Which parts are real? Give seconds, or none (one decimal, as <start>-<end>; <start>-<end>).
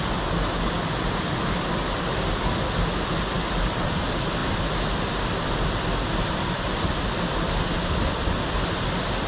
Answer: 0.0-9.3